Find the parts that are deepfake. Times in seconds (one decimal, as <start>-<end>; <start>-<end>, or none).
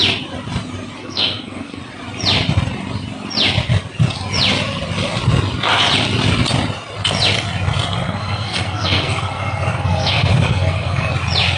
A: 1.0-1.8; 8.0-11.1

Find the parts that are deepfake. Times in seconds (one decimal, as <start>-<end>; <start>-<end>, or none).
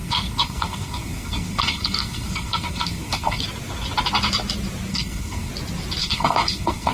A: 0.0-3.4; 4.9-5.5; 6.0-6.9